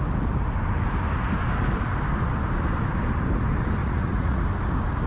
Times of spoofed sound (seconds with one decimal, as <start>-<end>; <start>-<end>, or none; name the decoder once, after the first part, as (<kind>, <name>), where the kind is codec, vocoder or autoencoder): 3.8-4.4 (vocoder, Vocos)